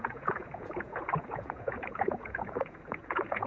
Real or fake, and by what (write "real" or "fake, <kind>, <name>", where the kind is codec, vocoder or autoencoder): fake, vocoder, Vocos